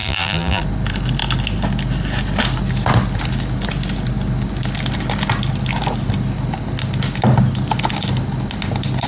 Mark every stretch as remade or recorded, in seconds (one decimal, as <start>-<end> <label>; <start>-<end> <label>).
0.0-0.6 remade; 0.6-9.1 recorded